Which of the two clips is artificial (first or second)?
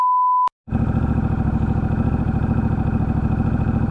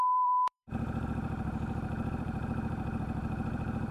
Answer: second